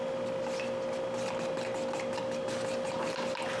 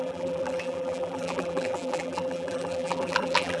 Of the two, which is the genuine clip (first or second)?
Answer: first